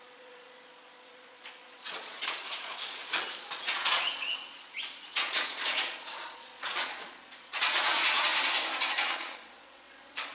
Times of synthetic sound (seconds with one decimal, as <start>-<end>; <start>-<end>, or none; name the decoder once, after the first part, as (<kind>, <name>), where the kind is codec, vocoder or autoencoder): 0.0-8.3 (vocoder, Vocos); 8.9-10.3